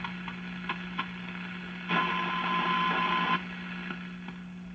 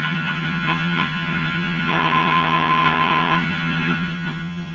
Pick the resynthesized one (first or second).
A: second